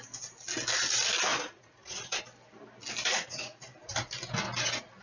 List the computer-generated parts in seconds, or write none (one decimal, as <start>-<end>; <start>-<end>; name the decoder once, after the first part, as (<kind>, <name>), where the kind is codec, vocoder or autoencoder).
1.3-2.2 (vocoder, Vocos); 3.1-3.9